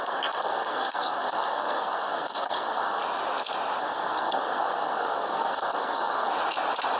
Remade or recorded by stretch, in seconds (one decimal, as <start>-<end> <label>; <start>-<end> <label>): 0.0-3.0 remade; 3.0-3.8 recorded; 3.8-6.3 remade; 6.3-7.0 recorded